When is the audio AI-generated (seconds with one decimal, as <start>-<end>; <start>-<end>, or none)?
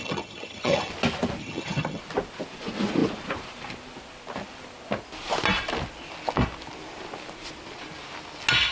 0.0-0.9; 1.4-2.0